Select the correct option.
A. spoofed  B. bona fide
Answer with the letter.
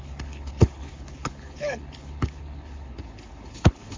A